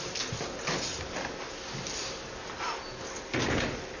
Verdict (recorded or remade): recorded